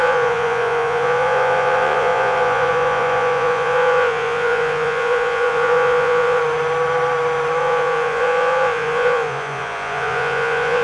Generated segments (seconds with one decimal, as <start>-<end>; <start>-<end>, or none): 0.0-6.4; 7.6-10.8